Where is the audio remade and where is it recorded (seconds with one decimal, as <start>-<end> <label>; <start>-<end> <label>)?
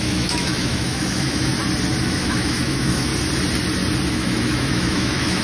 0.0-1.5 remade; 1.5-2.0 recorded; 2.0-3.1 remade; 3.1-4.1 recorded; 4.1-5.4 remade